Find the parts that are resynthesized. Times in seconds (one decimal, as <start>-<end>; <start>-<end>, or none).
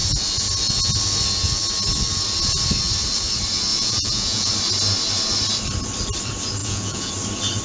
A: 3.7-4.5; 6.6-7.1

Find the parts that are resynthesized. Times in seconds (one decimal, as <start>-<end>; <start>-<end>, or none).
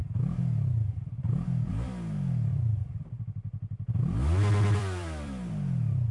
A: 2.5-5.5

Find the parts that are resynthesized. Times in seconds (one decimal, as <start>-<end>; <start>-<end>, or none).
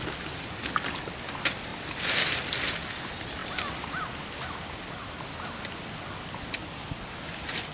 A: none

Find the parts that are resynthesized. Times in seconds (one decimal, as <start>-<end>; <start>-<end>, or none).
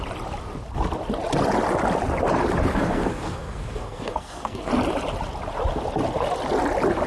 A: 2.7-4.7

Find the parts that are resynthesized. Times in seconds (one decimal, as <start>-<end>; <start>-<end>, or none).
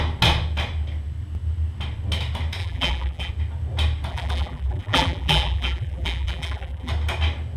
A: 2.6-3.3; 4.1-6.9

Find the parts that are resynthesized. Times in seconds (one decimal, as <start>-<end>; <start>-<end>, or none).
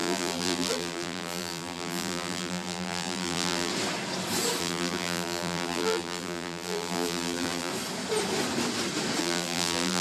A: 0.0-3.7; 4.6-7.7; 9.2-10.0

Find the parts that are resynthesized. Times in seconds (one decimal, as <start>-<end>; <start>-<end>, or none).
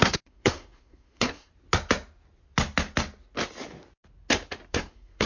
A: 0.0-1.5; 4.7-5.3